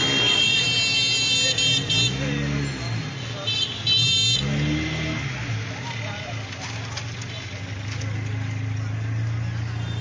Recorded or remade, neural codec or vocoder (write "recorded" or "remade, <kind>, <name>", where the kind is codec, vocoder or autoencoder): recorded